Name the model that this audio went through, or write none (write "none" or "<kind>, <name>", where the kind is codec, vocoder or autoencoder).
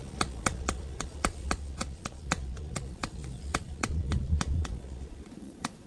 vocoder, Vocos